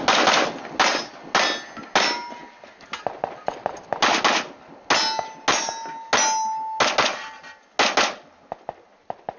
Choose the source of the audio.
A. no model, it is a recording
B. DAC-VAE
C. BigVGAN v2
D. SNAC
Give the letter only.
A